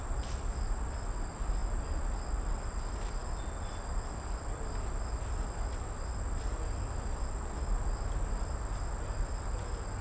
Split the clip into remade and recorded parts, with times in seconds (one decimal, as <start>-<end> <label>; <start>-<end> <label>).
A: 0.0-10.0 recorded